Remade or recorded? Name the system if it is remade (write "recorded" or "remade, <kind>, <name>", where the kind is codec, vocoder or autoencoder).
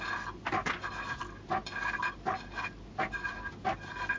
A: recorded